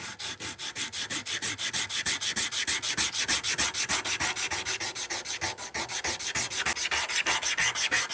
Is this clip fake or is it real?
real